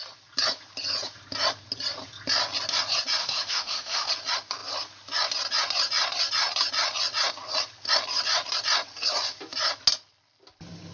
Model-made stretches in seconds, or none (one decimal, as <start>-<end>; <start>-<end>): 3.2-4.1